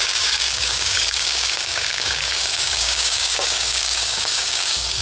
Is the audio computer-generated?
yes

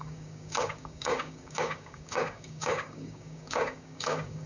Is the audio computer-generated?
yes